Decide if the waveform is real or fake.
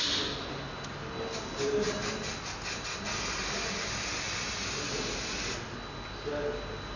real